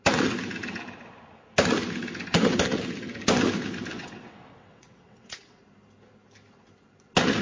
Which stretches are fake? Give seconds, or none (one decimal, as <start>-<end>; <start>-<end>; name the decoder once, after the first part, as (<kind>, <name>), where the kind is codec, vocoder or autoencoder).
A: 3.9-5.6 (vocoder, WaveNeXt)